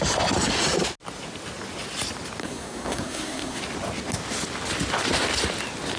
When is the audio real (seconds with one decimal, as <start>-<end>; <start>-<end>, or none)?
0.0-2.4; 3.6-6.0